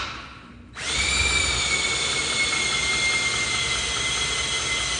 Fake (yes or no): no